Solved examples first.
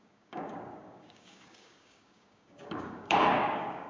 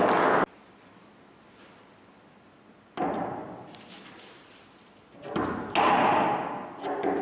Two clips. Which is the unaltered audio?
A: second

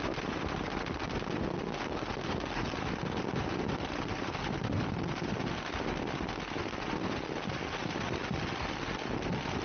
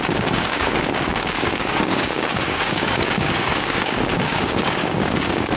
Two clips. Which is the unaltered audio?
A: first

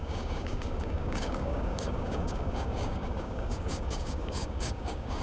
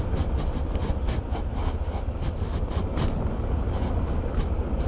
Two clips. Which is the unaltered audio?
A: second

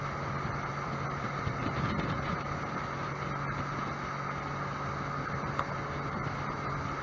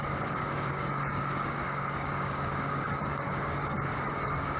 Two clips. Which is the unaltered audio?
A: first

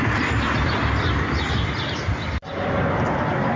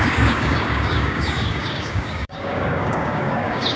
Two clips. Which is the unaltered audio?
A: first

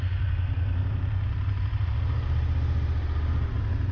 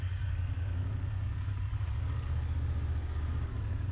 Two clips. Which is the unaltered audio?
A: first